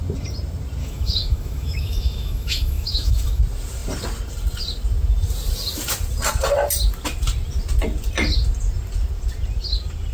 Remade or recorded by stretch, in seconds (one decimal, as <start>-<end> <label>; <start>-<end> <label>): 0.0-0.8 recorded; 0.8-3.4 remade; 3.4-10.1 recorded